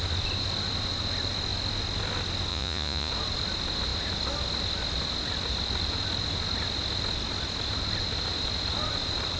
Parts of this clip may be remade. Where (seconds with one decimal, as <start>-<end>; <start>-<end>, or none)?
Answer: 2.5-3.1